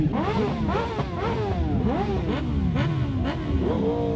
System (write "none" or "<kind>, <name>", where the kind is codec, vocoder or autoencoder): none